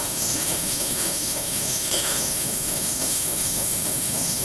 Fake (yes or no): yes